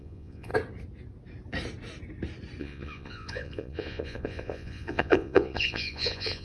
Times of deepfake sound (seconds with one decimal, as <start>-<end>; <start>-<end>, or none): 0.0-0.5; 2.6-6.4